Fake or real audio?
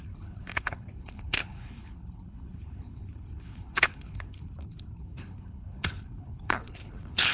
fake